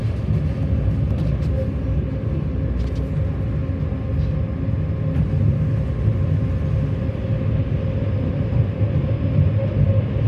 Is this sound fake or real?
real